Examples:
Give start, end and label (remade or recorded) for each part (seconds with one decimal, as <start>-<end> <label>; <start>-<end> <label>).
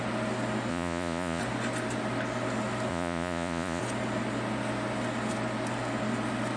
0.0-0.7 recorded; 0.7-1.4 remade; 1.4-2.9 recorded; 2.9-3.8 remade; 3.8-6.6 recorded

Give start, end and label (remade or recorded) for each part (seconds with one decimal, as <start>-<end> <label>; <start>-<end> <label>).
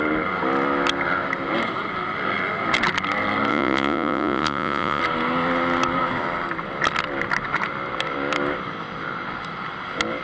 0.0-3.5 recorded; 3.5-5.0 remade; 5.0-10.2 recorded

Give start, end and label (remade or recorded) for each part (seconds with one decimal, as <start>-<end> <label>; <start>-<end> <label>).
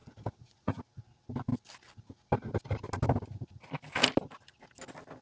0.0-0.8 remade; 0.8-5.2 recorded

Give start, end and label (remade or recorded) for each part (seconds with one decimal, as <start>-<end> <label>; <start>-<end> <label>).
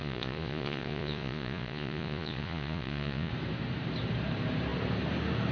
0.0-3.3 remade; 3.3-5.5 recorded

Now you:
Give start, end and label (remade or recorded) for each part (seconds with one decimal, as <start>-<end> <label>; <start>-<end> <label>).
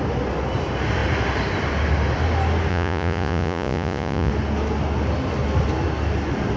0.0-2.7 recorded; 2.7-4.3 remade; 4.3-6.6 recorded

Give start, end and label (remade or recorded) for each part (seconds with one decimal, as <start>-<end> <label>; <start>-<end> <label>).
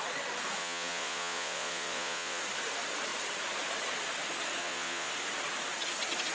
0.0-0.6 recorded; 0.6-2.4 remade; 2.4-4.6 recorded; 4.6-5.1 remade; 5.1-6.3 recorded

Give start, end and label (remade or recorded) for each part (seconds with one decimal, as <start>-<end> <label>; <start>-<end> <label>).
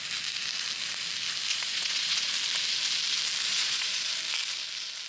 0.0-1.5 recorded; 1.5-2.3 remade; 2.3-3.5 recorded; 3.5-4.1 remade; 4.1-5.1 recorded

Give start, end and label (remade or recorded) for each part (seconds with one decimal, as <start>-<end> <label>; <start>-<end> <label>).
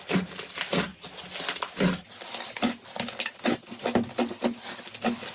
0.0-5.3 recorded